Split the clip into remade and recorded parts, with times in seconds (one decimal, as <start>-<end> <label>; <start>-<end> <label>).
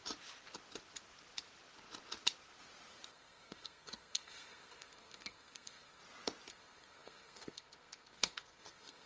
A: 0.0-3.1 recorded; 3.1-6.0 remade; 6.0-6.5 recorded; 6.5-9.1 remade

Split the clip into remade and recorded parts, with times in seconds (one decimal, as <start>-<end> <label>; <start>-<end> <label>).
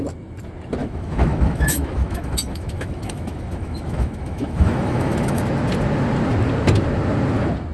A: 0.0-0.8 recorded; 0.8-5.4 remade; 5.4-7.7 recorded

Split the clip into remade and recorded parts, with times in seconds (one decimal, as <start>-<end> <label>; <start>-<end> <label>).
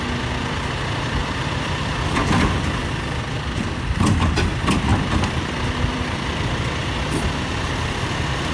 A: 0.0-1.2 recorded; 1.2-2.9 remade; 2.9-4.9 recorded; 4.9-8.1 remade; 8.1-8.5 recorded